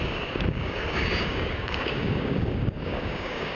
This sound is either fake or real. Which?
fake